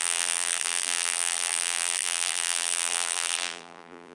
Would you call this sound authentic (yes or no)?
no